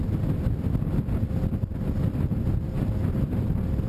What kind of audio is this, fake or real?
real